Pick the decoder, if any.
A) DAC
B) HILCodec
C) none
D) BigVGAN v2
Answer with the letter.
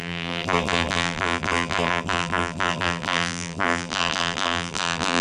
D